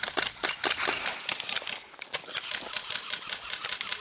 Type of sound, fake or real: real